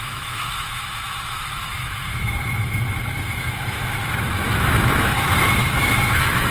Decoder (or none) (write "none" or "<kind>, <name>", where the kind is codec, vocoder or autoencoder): autoencoder, DAC-VAE